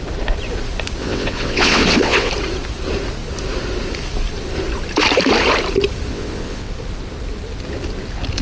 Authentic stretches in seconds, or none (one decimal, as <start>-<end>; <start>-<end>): 0.0-1.0; 2.3-6.1; 6.7-8.4